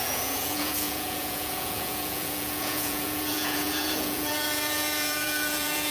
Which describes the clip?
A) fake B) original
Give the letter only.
A